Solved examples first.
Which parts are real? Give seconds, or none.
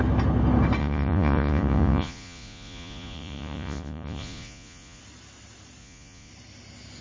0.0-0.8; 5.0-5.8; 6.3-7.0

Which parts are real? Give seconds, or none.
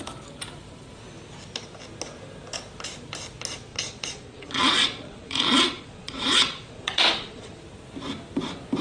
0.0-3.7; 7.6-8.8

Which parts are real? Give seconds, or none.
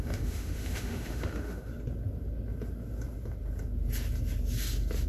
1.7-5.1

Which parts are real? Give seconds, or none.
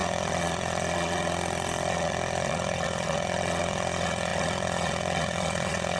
none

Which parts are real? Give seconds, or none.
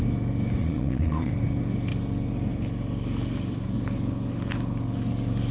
0.0-0.6; 1.3-5.5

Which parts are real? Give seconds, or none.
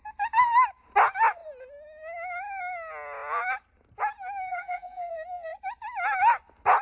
0.0-4.5; 5.1-6.8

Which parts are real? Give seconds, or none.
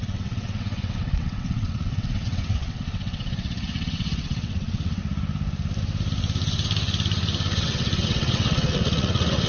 5.0-7.6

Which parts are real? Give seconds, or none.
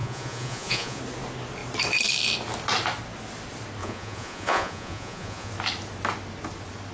1.0-3.8; 5.5-6.9